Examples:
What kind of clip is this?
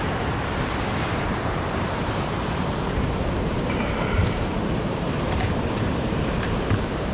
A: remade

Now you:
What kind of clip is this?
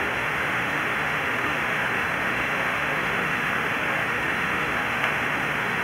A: remade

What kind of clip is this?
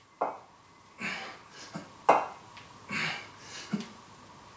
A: recorded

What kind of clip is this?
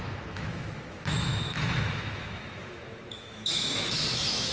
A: remade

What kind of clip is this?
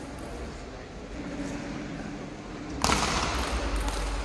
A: recorded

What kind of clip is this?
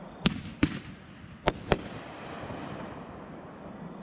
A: recorded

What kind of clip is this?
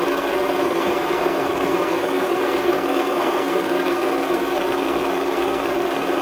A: remade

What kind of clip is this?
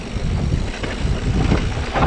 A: recorded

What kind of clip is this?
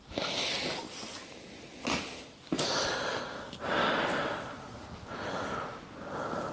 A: recorded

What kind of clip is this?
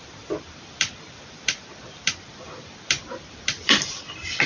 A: remade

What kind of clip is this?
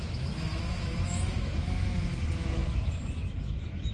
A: remade